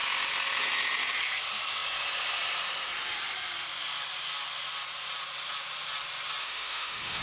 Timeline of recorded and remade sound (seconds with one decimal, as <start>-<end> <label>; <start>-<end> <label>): 0.0-6.4 recorded; 6.4-7.2 remade